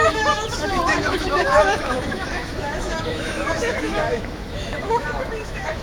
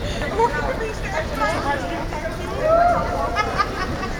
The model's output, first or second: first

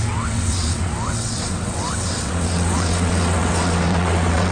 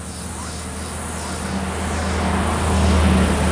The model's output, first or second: first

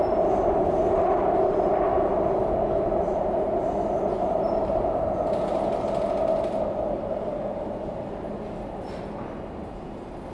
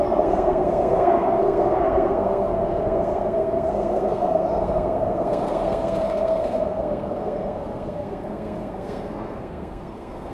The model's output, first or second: second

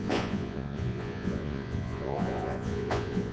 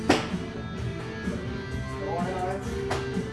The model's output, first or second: first